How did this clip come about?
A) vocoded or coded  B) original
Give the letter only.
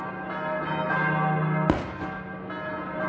B